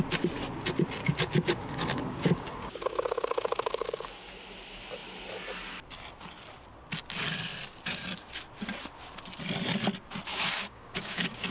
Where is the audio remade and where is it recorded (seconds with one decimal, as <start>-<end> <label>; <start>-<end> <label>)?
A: 0.0-1.0 recorded; 1.0-4.3 remade; 4.3-10.3 recorded; 10.3-11.5 remade